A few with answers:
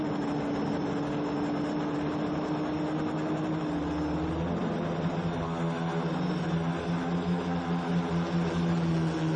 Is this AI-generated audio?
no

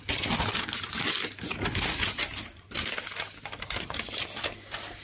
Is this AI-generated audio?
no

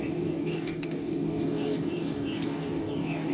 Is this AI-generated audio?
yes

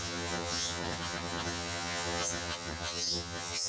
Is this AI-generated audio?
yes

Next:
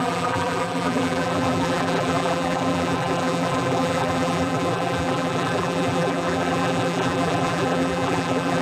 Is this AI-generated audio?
yes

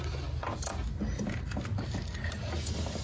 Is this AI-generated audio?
no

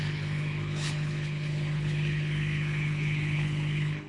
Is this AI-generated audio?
yes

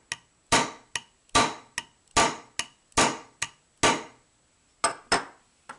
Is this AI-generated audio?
no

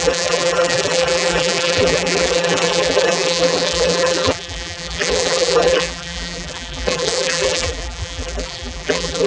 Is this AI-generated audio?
yes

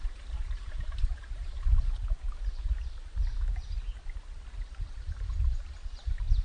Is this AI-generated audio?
no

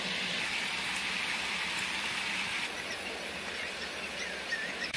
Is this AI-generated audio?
no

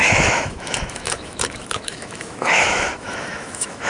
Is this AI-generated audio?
yes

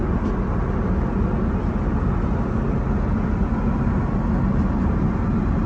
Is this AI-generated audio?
no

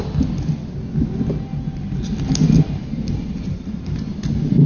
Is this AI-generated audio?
no